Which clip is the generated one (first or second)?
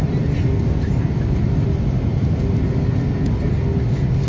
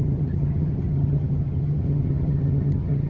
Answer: second